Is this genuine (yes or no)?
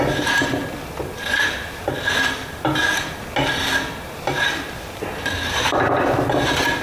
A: yes